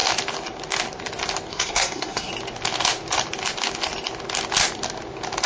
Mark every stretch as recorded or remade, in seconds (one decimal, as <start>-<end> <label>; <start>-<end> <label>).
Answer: 0.0-1.5 recorded; 1.5-2.3 remade; 2.3-5.5 recorded